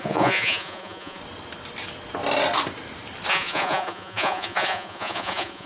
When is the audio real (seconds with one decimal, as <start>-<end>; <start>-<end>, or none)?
1.2-3.3